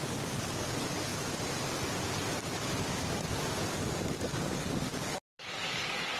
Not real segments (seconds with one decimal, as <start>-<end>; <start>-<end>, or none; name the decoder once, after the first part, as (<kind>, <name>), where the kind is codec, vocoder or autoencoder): 0.0-1.1 (codec, DAC); 3.7-6.2